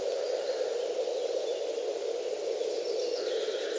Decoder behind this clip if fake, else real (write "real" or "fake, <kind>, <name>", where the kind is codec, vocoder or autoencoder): real